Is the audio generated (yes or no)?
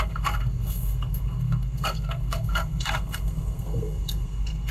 yes